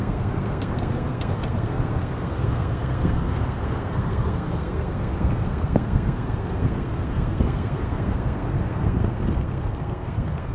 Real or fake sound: fake